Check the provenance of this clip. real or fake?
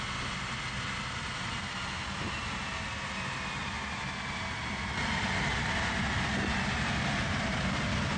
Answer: real